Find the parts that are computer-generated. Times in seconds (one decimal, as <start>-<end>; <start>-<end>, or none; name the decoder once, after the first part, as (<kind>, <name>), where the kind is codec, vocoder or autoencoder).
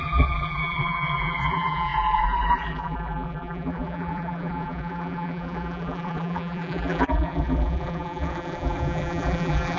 0.0-9.8 (vocoder, BigVGAN v2)